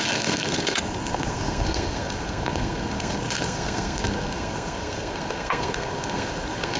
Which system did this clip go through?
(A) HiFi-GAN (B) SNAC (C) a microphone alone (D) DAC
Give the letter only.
B